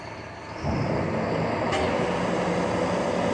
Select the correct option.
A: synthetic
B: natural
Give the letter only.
B